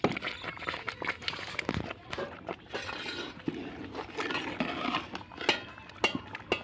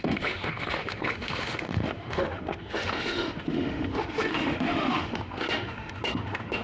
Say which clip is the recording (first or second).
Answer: first